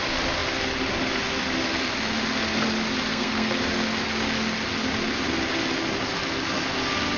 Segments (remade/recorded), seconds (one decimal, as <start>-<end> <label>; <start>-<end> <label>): 0.0-3.1 recorded; 3.1-3.6 remade; 3.6-7.2 recorded